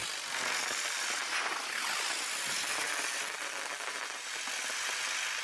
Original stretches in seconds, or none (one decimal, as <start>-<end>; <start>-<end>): 0.0-5.4